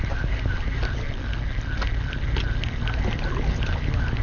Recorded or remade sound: recorded